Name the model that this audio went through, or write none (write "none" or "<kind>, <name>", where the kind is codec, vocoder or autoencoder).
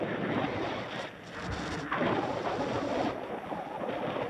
none